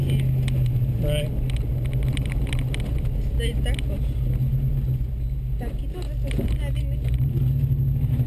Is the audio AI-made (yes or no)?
no